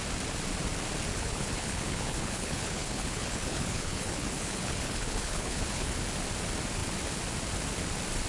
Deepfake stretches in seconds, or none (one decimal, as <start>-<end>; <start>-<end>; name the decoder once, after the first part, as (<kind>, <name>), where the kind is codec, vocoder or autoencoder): 1.1-5.9 (codec, HILCodec)